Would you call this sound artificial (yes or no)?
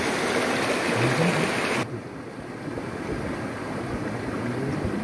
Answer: no